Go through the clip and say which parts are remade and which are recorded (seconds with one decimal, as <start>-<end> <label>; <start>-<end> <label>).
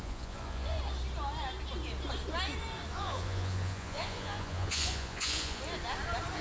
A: 0.0-0.8 remade; 0.8-2.9 recorded; 2.9-5.6 remade; 5.6-6.4 recorded